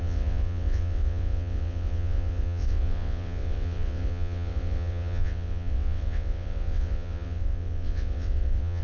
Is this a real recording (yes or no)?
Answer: no